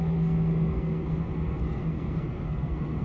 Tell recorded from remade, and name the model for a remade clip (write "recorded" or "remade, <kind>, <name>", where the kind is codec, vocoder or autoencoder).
remade, codec, SNAC